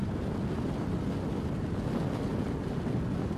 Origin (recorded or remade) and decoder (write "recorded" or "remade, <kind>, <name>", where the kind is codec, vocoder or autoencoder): recorded